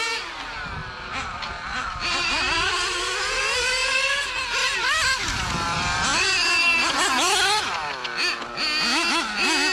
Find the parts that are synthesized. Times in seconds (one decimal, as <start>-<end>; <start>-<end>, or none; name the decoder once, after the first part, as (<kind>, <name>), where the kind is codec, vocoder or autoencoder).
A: 0.8-2.7 (vocoder, BigVGAN v2); 3.8-4.3